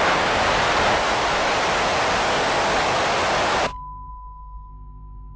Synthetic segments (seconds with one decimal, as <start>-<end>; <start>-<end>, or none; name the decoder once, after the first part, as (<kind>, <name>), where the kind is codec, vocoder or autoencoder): 4.1-4.7 (codec, DAC)